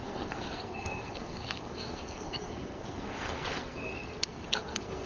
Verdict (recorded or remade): remade